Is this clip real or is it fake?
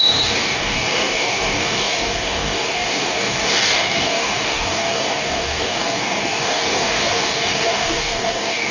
fake